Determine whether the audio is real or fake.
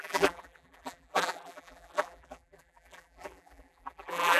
fake